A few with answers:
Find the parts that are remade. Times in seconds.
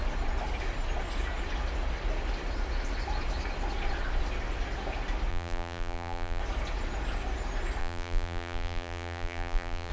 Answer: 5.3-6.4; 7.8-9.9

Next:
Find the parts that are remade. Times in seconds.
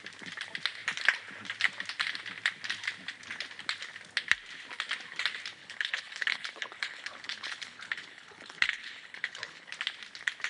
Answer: 5.6-9.7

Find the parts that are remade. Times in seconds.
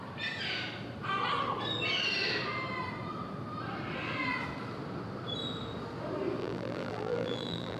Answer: 6.4-7.8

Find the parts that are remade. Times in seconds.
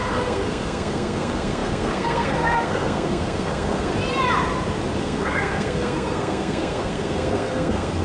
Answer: 0.0-3.9; 5.0-8.0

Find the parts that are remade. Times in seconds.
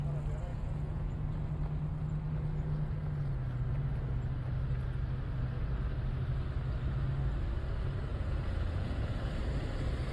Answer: 0.5-1.5; 8.1-9.3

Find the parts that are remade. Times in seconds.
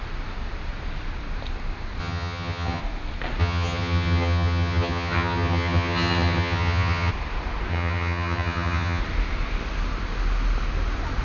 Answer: 2.0-2.8; 3.4-7.1; 7.7-9.0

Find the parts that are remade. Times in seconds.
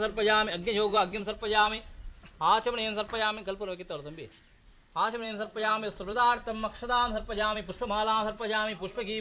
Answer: 0.9-2.3; 4.9-7.7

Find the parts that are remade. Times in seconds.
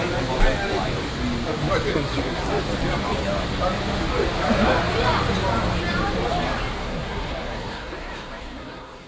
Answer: 1.9-2.5; 6.8-9.1